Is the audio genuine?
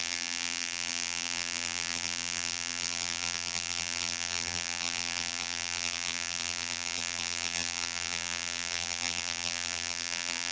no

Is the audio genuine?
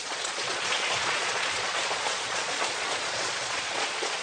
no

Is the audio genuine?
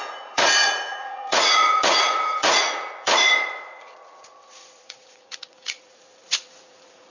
no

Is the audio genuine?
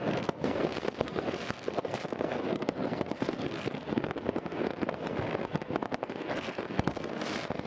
no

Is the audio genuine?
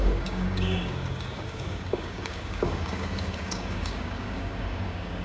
no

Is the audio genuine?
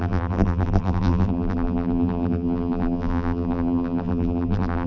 no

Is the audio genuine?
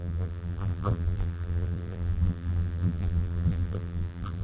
no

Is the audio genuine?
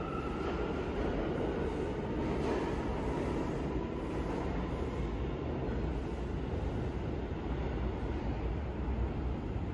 yes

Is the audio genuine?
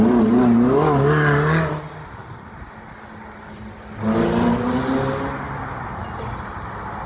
yes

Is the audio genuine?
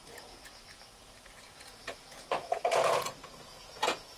no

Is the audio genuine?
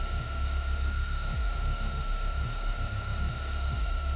no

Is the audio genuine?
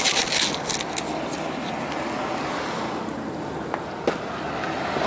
yes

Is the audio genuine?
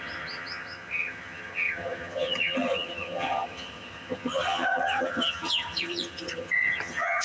no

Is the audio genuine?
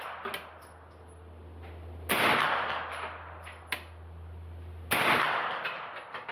yes